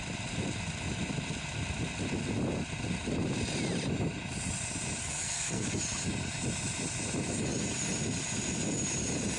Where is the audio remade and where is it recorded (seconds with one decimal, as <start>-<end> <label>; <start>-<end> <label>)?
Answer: 0.0-5.0 recorded; 5.0-5.8 remade; 5.8-9.4 recorded